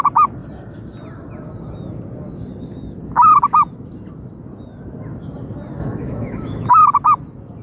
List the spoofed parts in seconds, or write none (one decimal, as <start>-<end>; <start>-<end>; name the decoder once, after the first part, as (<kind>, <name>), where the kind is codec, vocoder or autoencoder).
5.8-6.7 (autoencoder, DAC-VAE)

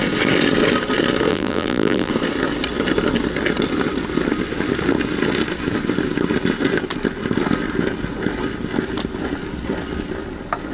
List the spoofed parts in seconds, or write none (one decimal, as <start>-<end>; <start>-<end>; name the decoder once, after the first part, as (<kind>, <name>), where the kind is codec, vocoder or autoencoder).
1.3-2.1 (vocoder, BigVGAN v2)

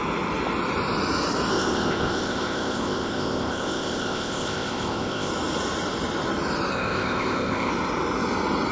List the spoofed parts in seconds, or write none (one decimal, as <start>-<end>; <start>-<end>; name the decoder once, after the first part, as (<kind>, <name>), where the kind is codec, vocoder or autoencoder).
1.5-5.3 (codec, ZipCodec); 6.7-7.7

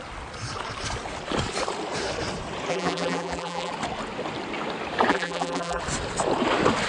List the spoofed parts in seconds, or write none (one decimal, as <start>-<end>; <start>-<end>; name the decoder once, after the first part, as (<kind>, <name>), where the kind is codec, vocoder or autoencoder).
2.7-3.7 (vocoder, BigVGAN v2); 5.1-5.8